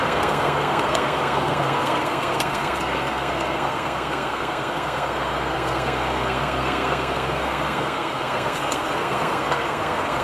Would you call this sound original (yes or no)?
no